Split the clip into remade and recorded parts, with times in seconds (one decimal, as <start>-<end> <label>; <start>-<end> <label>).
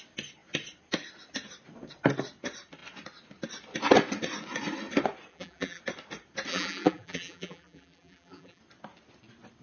0.0-5.3 recorded; 5.3-5.8 remade; 5.8-6.5 recorded; 6.5-8.6 remade; 8.6-9.6 recorded